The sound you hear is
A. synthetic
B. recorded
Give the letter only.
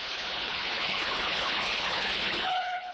A